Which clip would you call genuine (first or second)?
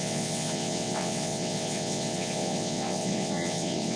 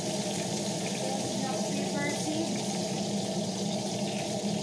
second